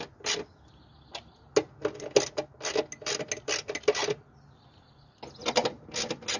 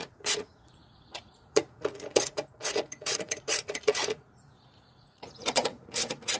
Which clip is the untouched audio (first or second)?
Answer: first